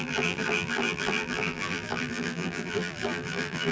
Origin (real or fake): fake